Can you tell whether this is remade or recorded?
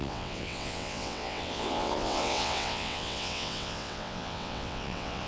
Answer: remade